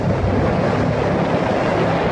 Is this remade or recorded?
recorded